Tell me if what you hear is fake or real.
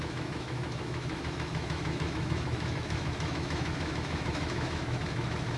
fake